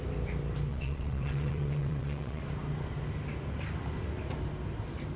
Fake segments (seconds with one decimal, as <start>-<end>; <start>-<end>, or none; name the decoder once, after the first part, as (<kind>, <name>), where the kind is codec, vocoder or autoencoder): 0.7-2.4 (vocoder, WaveNeXt)